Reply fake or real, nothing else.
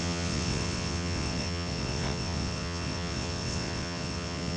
fake